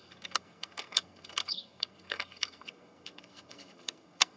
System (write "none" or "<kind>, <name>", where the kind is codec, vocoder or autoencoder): codec, SNAC